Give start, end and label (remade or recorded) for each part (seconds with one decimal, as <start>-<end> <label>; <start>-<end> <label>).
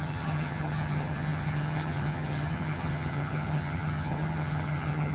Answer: 0.0-5.1 remade